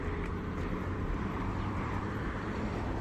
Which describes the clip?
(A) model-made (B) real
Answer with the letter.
A